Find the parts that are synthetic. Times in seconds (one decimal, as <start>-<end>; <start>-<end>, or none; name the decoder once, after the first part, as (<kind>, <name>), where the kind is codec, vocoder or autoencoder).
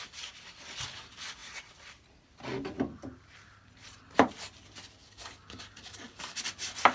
5.0-6.4 (codec, DAC)